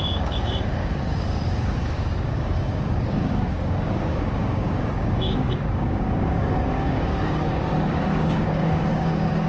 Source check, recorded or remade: remade